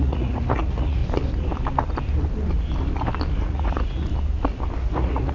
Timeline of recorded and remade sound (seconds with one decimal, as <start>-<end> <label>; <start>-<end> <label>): 0.0-1.0 remade; 1.0-3.4 recorded; 3.4-4.1 remade; 4.1-4.8 recorded; 4.8-5.3 remade